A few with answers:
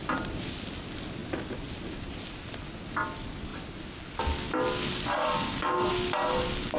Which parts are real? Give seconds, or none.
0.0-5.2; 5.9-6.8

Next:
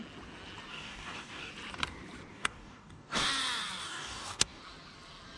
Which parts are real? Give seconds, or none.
0.0-0.7; 1.5-2.3; 3.3-3.8; 4.6-5.4

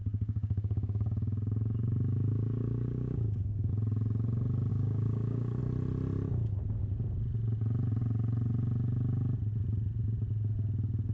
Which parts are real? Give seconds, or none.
3.7-4.7; 5.6-11.1

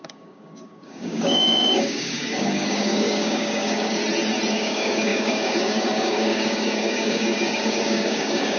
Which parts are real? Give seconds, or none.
4.0-4.5

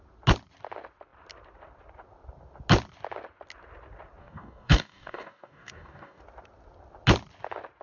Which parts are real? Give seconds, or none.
0.0-4.2; 6.2-7.8

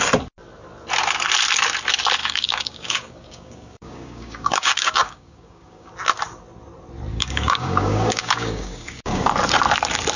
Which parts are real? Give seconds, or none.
0.0-2.2; 5.9-7.1; 9.3-10.2

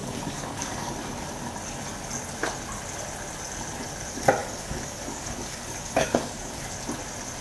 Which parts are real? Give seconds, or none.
0.9-4.4; 6.6-7.4

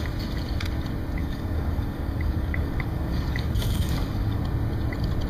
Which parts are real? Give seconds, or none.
0.0-1.2; 4.4-5.3